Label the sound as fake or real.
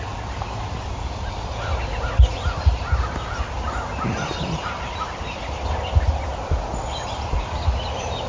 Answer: real